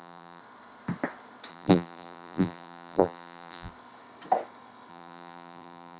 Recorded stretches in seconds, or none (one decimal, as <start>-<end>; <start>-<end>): 0.4-1.5; 3.7-4.9